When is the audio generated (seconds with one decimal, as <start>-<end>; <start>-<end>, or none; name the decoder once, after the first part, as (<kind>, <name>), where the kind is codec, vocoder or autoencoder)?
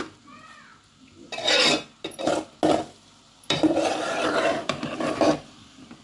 3.2-6.0 (vocoder, BigVGAN v2)